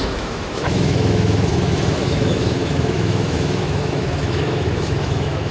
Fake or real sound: fake